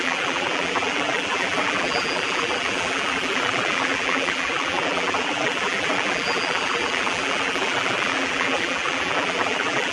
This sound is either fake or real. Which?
fake